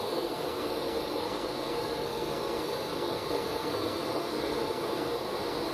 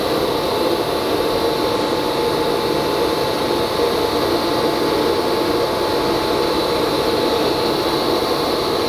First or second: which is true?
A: second